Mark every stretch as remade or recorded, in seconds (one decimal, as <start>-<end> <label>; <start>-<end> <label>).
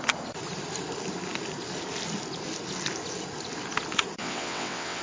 0.0-4.2 recorded; 4.2-5.0 remade